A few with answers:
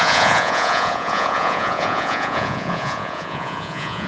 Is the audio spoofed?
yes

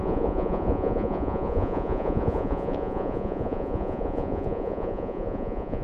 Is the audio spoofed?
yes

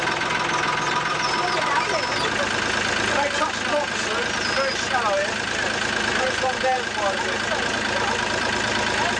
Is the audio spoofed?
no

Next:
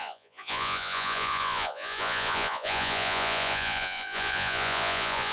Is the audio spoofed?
yes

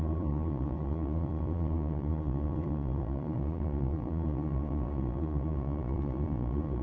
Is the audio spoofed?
yes